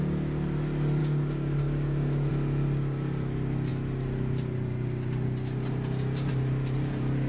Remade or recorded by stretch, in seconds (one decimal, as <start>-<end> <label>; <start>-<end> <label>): 0.0-1.0 recorded; 1.0-2.3 remade; 2.3-7.3 recorded